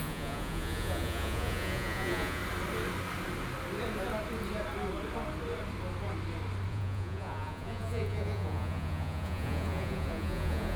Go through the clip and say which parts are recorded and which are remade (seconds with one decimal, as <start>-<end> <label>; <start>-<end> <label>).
0.0-2.4 remade; 2.4-6.7 recorded; 6.7-10.8 remade